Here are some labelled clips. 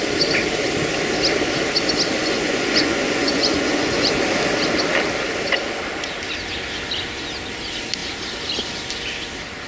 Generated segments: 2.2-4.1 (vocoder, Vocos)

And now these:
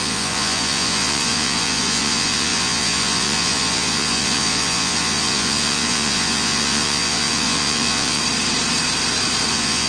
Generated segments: 0.0-8.2 (vocoder, Vocos); 9.5-9.9

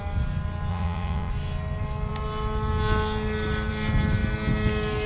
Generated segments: 0.7-1.3 (vocoder, Vocos)

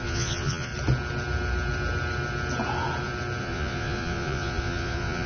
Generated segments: 0.0-0.7 (vocoder, Vocos); 3.4-5.3

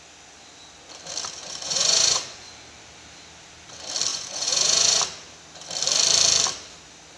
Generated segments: 1.4-2.5 (vocoder, Vocos); 4.1-5.0

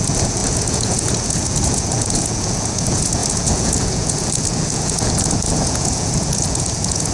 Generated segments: 0.0-7.1 (vocoder, Vocos)

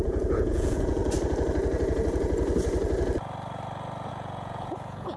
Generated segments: 0.0-1.0 (vocoder, Vocos); 4.1-5.2

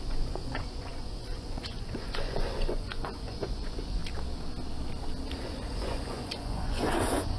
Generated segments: 0.0-4.0 (vocoder, Vocos); 5.4-7.4